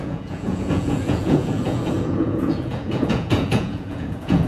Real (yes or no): no